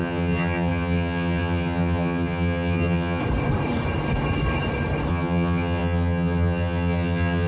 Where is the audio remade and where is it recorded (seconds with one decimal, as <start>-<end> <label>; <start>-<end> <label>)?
0.0-3.2 remade; 3.2-5.1 recorded; 5.1-7.5 remade